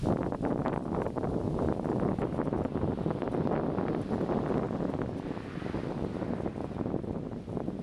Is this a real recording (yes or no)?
yes